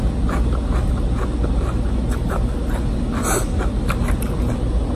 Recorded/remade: recorded